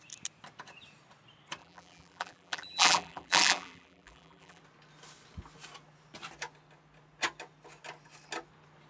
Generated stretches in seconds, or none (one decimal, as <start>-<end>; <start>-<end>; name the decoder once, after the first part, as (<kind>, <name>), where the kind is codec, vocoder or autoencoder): 1.6-4.6 (vocoder, BigVGAN v2)